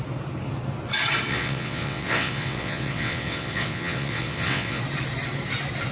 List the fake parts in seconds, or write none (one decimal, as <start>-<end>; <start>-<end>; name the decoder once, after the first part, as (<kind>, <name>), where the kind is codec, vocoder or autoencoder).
1.3-4.8 (vocoder, WaveNeXt)